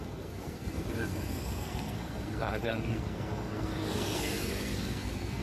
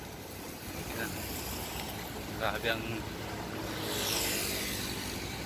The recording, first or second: second